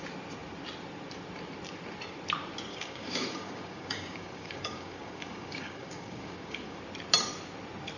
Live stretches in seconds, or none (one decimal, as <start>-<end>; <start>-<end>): 0.0-2.7; 6.8-8.0